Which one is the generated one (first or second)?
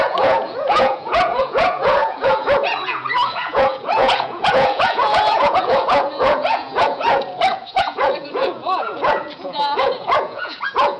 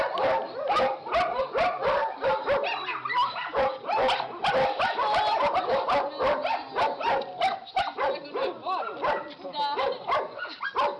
first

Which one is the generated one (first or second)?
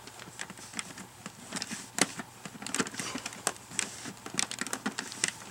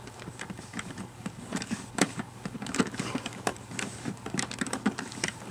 second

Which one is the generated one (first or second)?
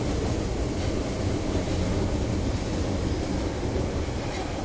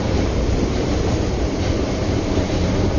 second